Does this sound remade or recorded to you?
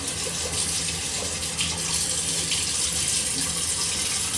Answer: recorded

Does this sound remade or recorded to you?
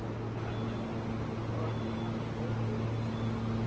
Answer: recorded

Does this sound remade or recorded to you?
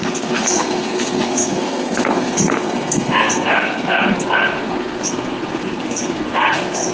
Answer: remade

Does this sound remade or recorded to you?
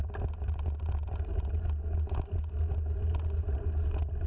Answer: recorded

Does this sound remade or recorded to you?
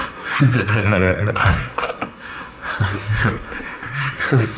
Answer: remade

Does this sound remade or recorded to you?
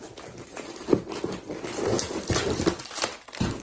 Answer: recorded